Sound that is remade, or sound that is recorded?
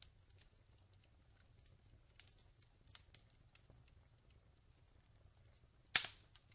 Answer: recorded